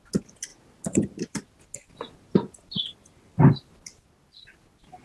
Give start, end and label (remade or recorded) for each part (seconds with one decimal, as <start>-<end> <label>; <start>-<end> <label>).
0.0-5.0 recorded